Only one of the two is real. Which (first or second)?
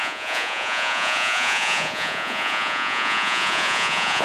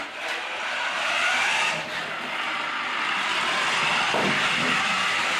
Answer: second